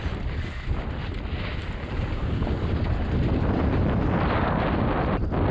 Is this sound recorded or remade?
recorded